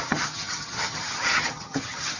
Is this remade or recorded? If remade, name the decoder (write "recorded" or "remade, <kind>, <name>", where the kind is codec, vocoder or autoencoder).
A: remade, vocoder, HiFi-GAN